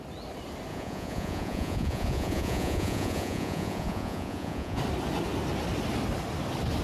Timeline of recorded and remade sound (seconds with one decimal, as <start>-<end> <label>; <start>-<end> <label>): 0.0-0.7 recorded; 0.7-4.8 remade; 4.8-6.8 recorded